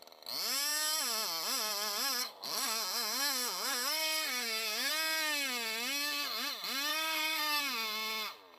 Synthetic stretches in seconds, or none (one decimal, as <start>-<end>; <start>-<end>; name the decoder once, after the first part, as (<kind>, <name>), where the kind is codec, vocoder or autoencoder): 2.2-4.9 (codec, SNAC); 6.9-7.6